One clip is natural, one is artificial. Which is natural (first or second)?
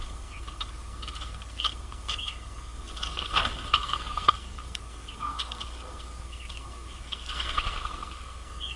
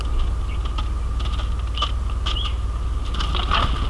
second